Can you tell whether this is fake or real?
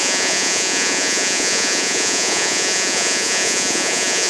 fake